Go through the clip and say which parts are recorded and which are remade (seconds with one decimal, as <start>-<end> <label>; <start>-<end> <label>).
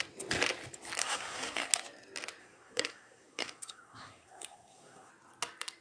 0.0-1.0 recorded; 1.0-1.7 remade; 1.7-2.4 recorded; 2.4-5.1 remade; 5.1-5.8 recorded